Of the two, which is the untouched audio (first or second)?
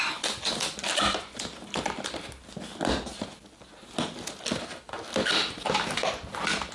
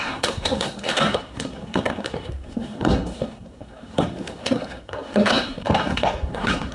first